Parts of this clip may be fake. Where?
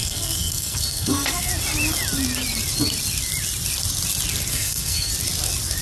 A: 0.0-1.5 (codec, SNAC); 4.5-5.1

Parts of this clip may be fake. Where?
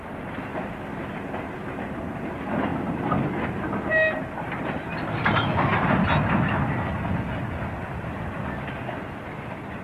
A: none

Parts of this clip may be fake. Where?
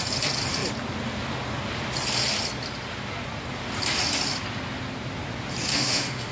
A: 5.7-6.3 (autoencoder, DAC-VAE)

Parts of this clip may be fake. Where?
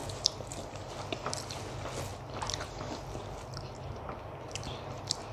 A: none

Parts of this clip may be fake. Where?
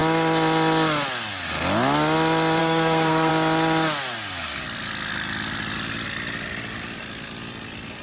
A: 2.6-3.3 (codec, SNAC)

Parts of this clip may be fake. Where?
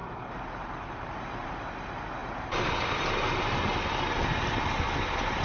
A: 0.0-1.6 (vocoder, BigVGAN v2); 2.2-3.6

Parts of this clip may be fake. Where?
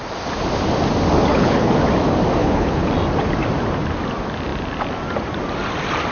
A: 1.3-1.8 (codec, HILCodec); 2.4-2.9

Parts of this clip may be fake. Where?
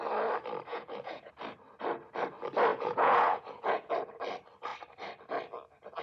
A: 0.7-1.3 (vocoder, Vocos); 2.7-3.9